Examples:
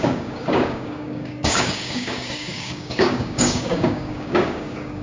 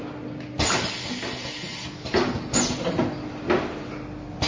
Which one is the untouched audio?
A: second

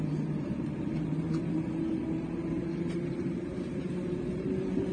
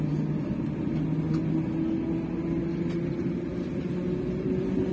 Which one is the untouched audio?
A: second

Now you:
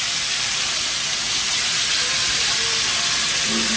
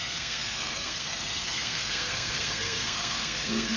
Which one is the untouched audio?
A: first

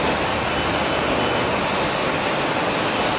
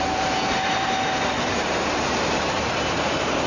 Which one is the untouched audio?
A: first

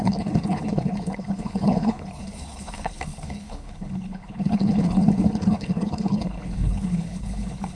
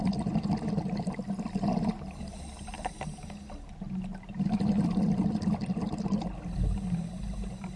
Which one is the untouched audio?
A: second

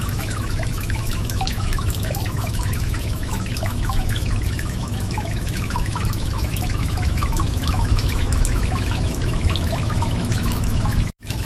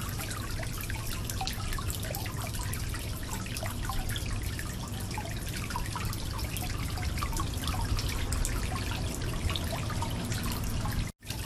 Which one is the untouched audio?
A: second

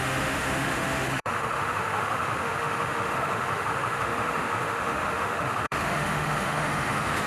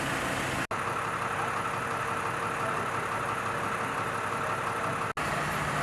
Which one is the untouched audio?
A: second